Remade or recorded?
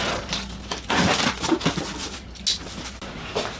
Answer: recorded